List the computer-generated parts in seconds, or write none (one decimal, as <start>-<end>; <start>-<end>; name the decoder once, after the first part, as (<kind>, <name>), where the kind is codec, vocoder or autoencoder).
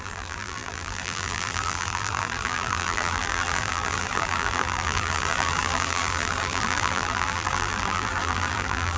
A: 0.0-9.0 (vocoder, BigVGAN v2)